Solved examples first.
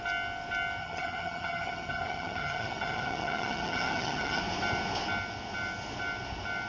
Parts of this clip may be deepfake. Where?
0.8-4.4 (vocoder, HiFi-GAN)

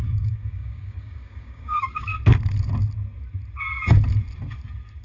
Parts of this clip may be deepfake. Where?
0.0-2.1 (codec, DAC)

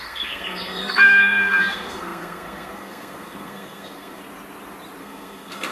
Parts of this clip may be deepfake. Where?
0.0-4.2 (codec, SNAC); 5.0-5.7

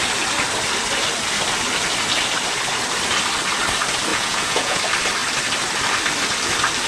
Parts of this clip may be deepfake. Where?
4.1-4.8 (vocoder, Vocos)